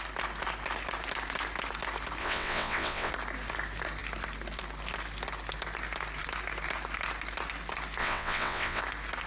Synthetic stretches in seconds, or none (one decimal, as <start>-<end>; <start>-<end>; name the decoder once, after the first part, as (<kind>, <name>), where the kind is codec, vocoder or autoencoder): 2.2-3.1 (vocoder, WaveNeXt); 8.0-8.8